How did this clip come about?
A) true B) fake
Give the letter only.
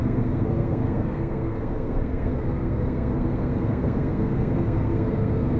B